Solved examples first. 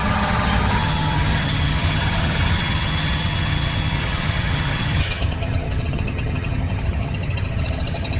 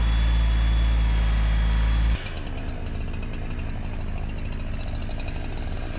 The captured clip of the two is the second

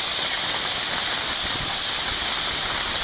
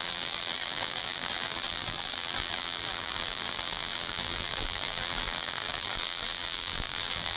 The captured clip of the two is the first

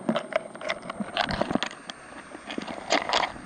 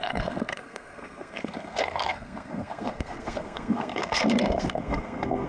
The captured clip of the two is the first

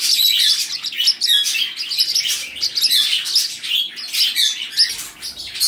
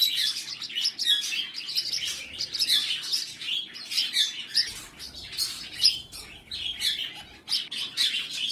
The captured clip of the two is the first